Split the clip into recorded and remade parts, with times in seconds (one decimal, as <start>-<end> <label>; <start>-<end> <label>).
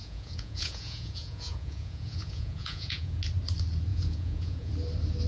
0.0-3.2 remade; 3.2-3.9 recorded; 3.9-4.7 remade; 4.7-5.3 recorded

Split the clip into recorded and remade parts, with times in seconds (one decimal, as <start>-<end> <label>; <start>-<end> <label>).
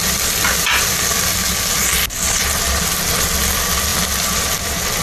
0.0-5.0 recorded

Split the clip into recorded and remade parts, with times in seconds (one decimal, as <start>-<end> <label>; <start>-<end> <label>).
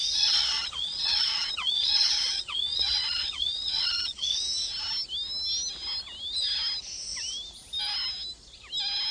0.0-4.4 remade; 4.4-9.1 recorded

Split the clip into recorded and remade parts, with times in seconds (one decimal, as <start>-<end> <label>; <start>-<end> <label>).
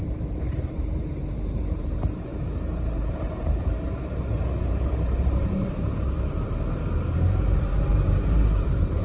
0.0-9.0 remade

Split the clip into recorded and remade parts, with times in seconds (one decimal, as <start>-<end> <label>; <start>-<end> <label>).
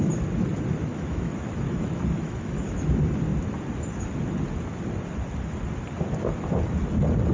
0.0-0.9 recorded; 0.9-2.8 remade; 2.8-7.3 recorded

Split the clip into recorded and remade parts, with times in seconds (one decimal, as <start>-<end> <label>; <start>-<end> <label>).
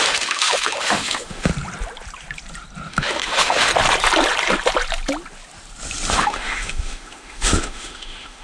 0.0-1.5 remade; 1.5-2.9 recorded; 2.9-3.7 remade; 3.7-6.1 recorded; 6.1-8.4 remade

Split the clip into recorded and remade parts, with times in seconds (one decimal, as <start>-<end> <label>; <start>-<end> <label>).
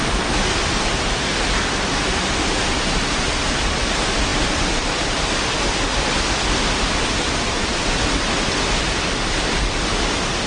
0.0-10.5 remade